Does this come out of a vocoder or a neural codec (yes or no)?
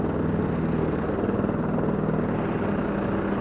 no